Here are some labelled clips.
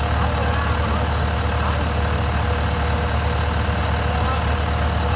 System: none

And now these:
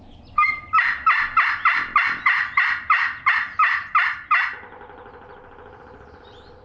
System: none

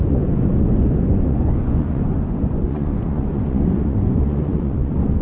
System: vocoder, Vocos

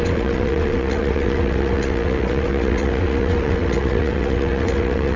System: vocoder, WaveNeXt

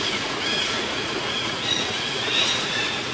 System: vocoder, Vocos